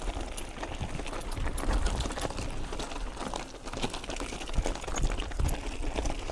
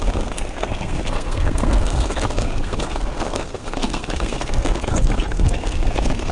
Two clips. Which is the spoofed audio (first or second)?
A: second